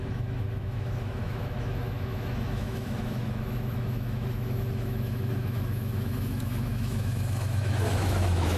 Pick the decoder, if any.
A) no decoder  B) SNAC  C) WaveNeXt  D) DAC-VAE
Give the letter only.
D